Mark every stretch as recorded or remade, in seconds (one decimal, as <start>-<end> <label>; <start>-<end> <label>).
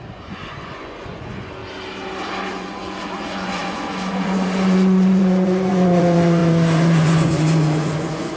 0.0-1.6 remade; 1.6-2.5 recorded; 2.5-8.4 remade